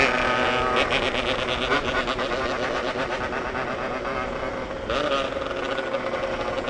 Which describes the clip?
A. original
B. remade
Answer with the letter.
A